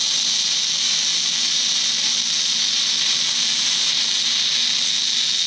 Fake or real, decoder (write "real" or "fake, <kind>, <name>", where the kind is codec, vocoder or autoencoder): real